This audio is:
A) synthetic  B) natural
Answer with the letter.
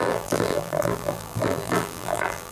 A